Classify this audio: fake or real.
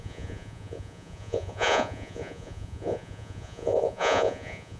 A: fake